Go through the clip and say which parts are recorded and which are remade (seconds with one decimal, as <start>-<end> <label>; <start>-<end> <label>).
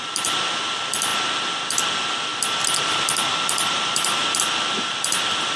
0.0-1.1 remade; 1.1-1.8 recorded; 1.8-2.3 remade; 2.3-3.3 recorded; 3.3-5.6 remade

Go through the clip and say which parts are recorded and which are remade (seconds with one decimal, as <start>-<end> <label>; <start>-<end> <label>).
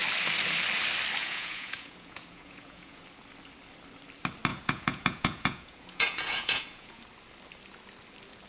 0.0-1.2 recorded; 1.2-3.0 remade; 3.0-4.5 recorded; 4.5-7.0 remade; 7.0-8.5 recorded